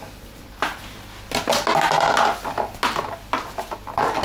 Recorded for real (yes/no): yes